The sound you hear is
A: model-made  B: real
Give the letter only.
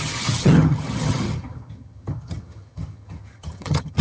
A